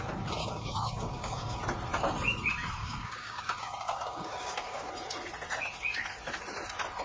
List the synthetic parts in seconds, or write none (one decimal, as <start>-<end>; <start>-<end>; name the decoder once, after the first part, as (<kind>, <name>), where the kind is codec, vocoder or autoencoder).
0.4-1.6 (codec, DAC); 2.8-4.9